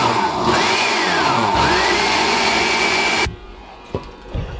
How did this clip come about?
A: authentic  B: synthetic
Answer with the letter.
B